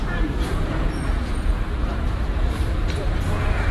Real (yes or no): no